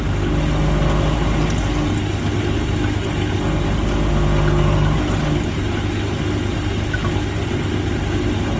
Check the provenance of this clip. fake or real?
real